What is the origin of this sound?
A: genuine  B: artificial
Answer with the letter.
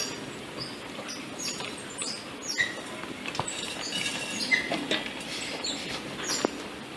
A